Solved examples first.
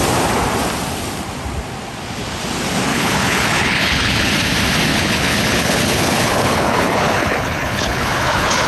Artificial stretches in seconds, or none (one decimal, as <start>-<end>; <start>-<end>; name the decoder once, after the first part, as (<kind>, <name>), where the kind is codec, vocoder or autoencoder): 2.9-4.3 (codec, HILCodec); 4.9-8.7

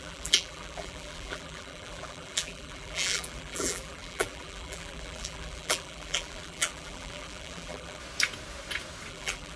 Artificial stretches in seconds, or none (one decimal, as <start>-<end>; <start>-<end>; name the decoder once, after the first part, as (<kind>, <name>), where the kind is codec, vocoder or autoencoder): 0.0-8.0 (vocoder, BigVGAN v2); 9.1-9.6

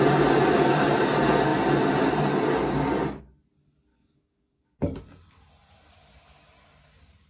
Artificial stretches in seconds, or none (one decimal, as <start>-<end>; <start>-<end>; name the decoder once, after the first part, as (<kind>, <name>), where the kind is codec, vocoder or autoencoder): 3.9-5.0 (codec, DAC)